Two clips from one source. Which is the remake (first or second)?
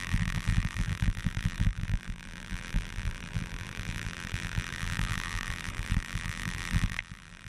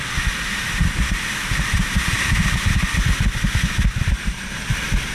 first